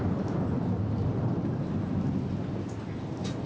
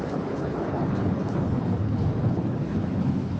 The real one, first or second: first